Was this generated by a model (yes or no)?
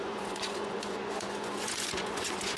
yes